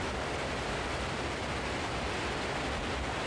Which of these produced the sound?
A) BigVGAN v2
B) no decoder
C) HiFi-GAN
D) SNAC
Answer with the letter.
B